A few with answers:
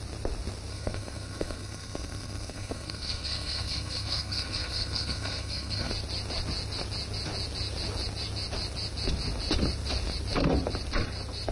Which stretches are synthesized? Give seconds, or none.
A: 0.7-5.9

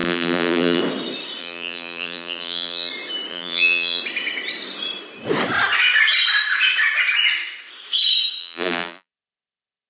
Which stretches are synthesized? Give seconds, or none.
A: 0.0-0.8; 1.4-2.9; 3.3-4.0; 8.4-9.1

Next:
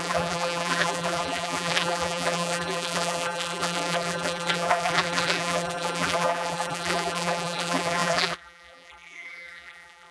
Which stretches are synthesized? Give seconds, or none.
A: 0.0-10.1